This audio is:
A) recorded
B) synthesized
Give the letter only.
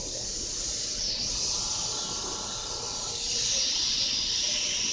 A